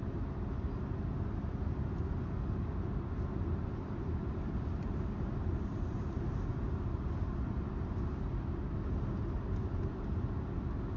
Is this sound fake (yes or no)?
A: no